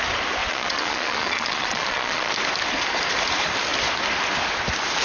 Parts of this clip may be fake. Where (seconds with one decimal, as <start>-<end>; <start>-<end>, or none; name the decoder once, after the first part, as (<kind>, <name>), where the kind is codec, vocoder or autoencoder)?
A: 0.4-2.3 (vocoder, Vocos)